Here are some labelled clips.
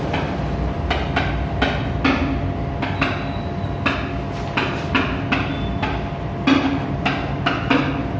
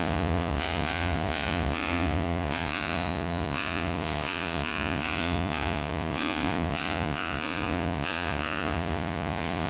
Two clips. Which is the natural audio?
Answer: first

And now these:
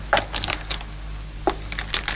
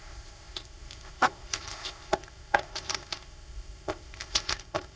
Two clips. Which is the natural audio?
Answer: first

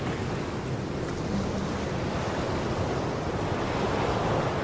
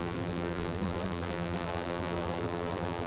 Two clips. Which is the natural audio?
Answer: first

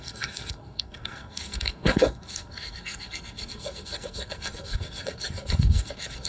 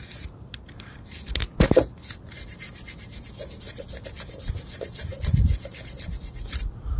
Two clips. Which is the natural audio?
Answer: second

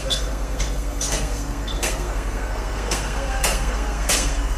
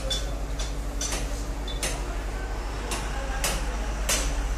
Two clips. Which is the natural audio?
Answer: second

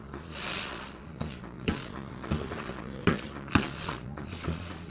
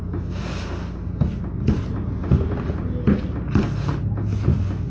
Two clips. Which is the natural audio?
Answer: second